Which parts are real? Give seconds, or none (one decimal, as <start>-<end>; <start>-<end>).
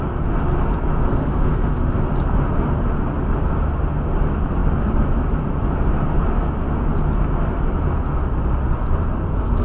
0.0-1.1; 2.0-9.6